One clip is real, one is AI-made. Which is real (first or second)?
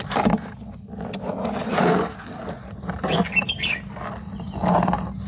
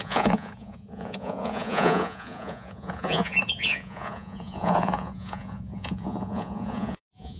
first